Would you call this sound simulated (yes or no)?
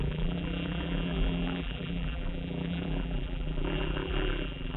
yes